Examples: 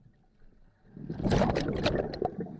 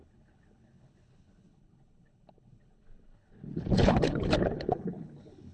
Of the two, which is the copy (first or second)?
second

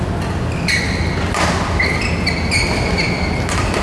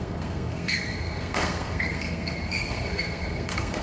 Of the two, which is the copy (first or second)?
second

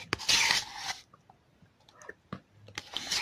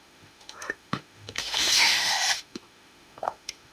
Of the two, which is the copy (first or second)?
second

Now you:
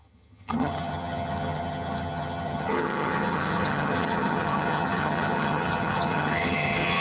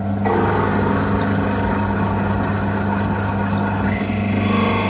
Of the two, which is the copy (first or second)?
first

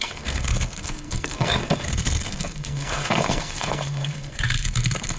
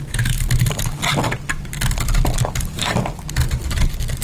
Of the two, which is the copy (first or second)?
first